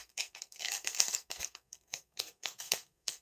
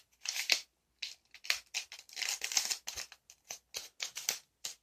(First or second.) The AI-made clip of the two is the first